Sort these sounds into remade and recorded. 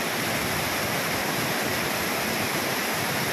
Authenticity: recorded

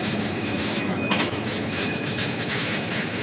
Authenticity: remade